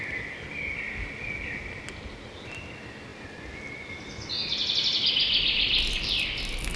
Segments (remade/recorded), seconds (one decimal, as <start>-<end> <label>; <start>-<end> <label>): 0.0-6.8 recorded